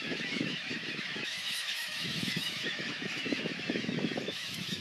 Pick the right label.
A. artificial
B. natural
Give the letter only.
A